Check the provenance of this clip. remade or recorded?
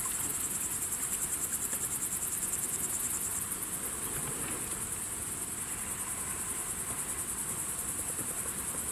remade